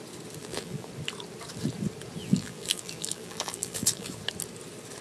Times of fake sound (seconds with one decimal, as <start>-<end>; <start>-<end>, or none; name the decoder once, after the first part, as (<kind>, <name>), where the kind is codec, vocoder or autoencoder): 0.4-0.9 (vocoder, BigVGAN v2); 2.2-4.2